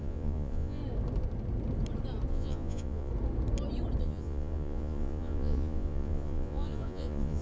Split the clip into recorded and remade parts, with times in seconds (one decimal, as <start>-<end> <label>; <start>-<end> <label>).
0.0-0.8 remade; 0.8-2.3 recorded; 2.3-3.1 remade; 3.1-4.0 recorded; 4.0-7.4 remade